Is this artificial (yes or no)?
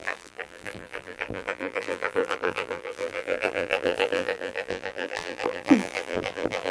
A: yes